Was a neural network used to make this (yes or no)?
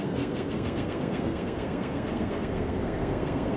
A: yes